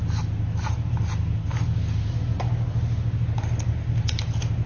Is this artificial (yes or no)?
no